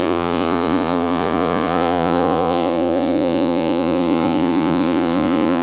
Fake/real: fake